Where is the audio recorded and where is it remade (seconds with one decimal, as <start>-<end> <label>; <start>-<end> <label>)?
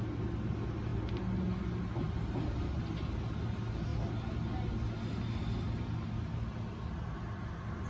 0.0-7.9 recorded